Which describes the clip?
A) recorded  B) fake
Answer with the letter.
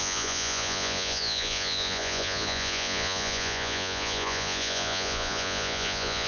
B